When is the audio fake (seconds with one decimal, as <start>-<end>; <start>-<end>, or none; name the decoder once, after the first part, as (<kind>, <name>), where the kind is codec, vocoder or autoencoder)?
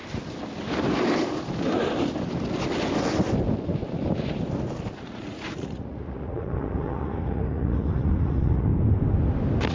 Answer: 4.9-8.7 (vocoder, Vocos)